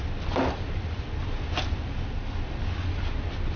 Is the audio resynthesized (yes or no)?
no